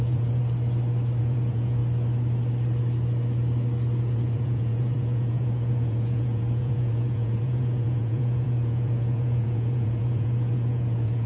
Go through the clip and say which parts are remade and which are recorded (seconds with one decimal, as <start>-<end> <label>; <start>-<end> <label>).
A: 0.0-0.4 remade; 0.4-1.2 recorded; 1.2-1.8 remade; 1.8-4.0 recorded; 4.0-11.3 remade